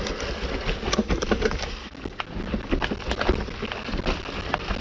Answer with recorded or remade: recorded